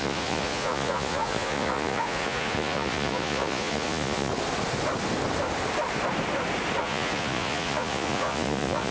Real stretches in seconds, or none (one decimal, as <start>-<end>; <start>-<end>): 4.3-6.8